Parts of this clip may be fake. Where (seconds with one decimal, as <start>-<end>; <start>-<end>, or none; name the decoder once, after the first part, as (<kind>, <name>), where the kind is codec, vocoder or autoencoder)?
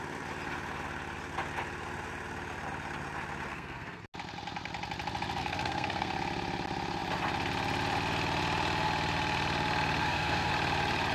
3.5-4.0 (codec, SNAC); 5.4-6.1; 10.0-10.5